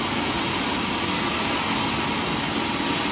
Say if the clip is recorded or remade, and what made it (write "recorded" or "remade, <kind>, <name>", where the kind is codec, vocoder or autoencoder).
recorded